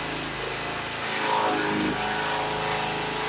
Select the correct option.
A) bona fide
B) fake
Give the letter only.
A